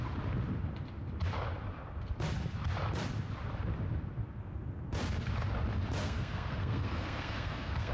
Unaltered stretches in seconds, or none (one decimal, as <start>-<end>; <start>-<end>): 0.0-6.0